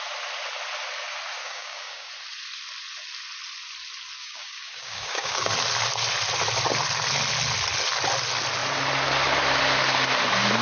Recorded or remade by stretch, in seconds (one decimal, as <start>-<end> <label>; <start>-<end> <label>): 0.0-1.4 recorded; 1.4-2.1 remade; 2.1-4.2 recorded; 4.2-5.5 remade; 5.5-10.6 recorded